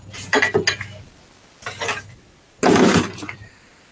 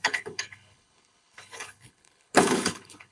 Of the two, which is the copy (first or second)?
second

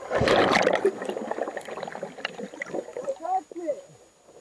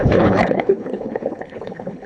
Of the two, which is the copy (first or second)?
second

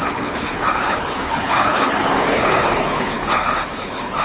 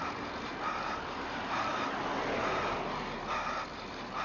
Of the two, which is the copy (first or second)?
first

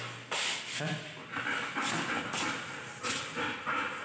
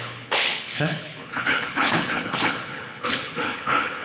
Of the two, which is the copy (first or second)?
second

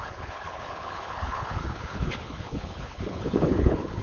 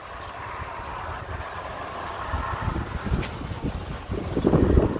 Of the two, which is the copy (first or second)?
first